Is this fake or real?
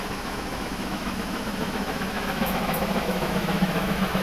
fake